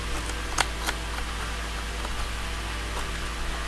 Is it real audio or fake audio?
real